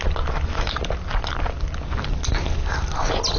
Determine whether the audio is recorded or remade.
recorded